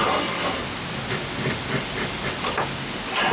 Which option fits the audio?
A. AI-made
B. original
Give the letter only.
B